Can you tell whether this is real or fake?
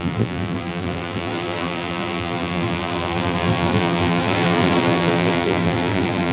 fake